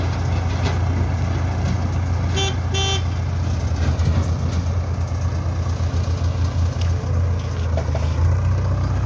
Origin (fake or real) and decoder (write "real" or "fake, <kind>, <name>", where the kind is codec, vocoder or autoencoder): real